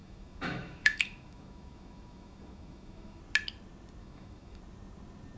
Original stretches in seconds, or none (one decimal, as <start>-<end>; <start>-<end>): 3.2-4.0; 4.6-5.4